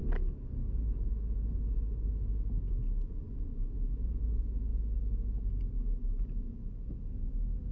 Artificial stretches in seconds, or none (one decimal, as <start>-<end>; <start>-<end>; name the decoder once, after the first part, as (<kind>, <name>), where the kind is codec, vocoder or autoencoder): none